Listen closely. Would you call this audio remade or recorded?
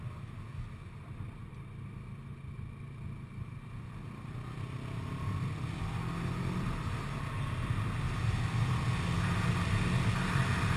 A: recorded